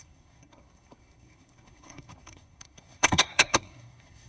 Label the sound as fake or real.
fake